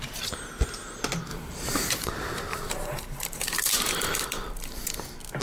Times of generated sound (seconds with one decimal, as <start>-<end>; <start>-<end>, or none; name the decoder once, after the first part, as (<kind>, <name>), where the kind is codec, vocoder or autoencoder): 1.3-1.9 (vocoder, BigVGAN v2); 2.5-4.9